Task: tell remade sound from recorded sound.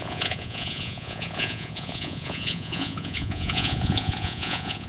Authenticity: remade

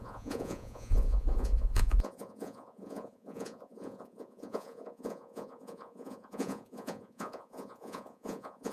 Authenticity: remade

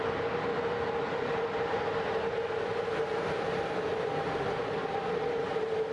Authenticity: recorded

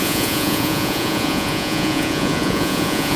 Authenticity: remade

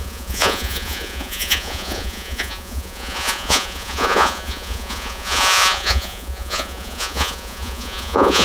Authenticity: remade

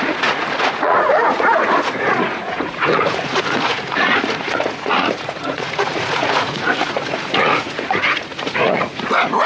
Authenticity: remade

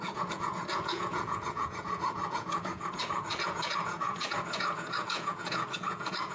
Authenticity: remade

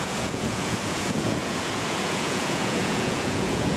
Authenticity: remade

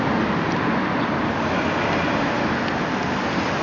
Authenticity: recorded